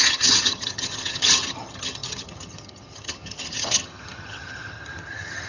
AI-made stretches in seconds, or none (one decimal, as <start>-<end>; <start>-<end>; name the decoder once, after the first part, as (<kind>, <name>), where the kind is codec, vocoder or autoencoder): 0.0-5.5 (vocoder, HiFi-GAN)